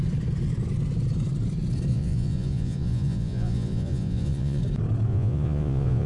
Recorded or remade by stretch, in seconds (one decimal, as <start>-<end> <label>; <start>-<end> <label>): 0.0-1.9 recorded; 1.9-4.6 remade; 4.6-5.1 recorded; 5.1-6.1 remade